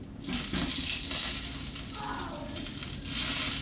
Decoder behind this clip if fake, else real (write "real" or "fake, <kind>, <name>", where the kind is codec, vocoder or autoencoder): real